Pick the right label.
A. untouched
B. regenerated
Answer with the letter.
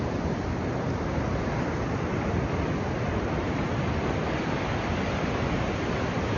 A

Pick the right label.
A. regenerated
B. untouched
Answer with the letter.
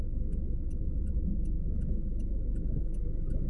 A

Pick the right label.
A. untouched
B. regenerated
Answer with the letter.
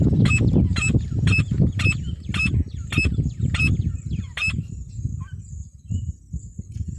A